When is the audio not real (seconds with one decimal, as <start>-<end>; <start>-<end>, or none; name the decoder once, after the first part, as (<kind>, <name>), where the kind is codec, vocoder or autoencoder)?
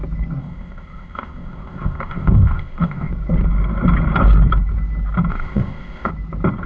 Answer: 0.4-3.1 (codec, ZipCodec); 5.3-6.1